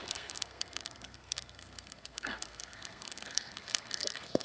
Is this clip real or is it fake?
fake